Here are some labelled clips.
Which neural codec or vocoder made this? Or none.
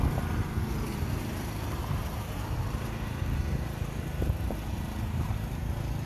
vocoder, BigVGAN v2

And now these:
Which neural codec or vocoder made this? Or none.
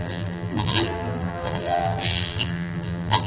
vocoder, BigVGAN v2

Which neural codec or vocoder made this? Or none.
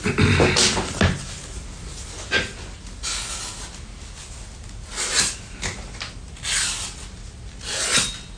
none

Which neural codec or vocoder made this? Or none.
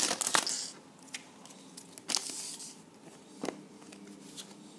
none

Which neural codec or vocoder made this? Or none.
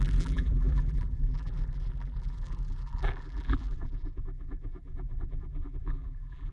vocoder, BigVGAN v2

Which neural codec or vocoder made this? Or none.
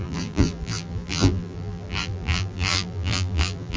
vocoder, BigVGAN v2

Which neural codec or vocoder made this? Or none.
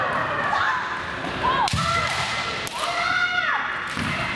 none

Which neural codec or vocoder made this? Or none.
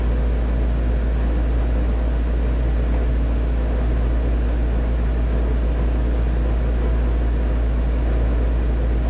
none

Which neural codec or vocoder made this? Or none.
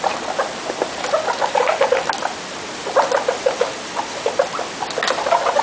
none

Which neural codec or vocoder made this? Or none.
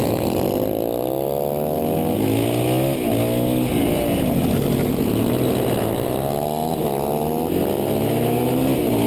none